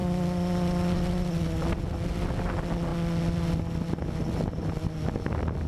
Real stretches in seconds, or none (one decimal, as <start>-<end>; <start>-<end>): 0.0-5.7